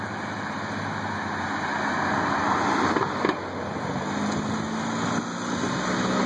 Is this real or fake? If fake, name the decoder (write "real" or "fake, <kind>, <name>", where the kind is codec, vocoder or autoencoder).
real